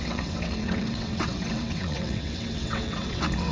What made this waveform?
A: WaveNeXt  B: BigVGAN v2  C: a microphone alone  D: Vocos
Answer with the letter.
A